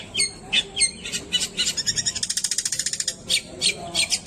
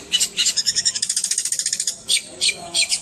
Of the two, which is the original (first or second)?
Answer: first